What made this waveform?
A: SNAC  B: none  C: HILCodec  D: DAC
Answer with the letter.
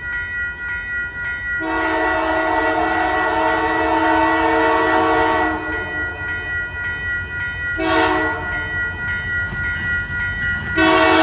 B